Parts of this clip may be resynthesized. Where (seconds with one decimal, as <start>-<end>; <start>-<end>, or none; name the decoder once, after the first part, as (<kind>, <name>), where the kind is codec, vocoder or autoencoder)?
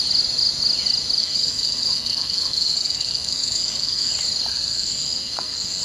1.2-4.1 (codec, SNAC); 4.5-5.8